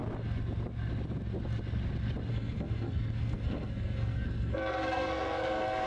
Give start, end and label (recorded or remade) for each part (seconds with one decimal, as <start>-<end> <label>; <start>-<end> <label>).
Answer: 0.0-2.3 recorded; 2.3-5.9 remade